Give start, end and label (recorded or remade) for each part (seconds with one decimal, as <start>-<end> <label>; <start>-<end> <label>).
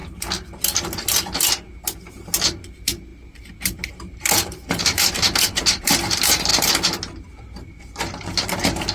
0.0-2.1 recorded; 2.1-6.5 remade; 6.5-7.4 recorded; 7.4-8.9 remade